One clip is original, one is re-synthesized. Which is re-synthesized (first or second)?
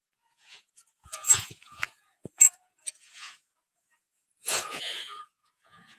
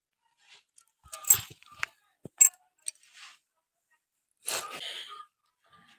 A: first